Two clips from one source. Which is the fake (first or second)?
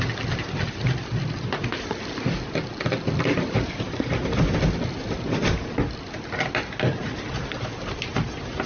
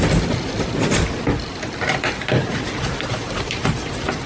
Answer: second